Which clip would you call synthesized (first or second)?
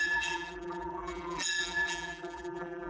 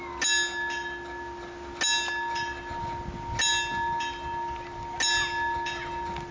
first